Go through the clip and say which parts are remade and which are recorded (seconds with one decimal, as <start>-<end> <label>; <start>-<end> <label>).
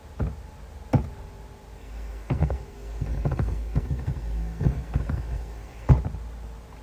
0.0-1.8 recorded; 1.8-5.9 remade; 5.9-6.8 recorded